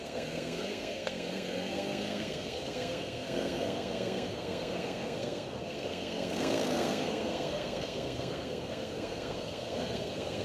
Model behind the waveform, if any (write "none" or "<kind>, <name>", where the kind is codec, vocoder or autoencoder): codec, SNAC